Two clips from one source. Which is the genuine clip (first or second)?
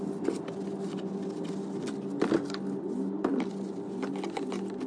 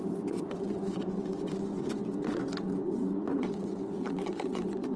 first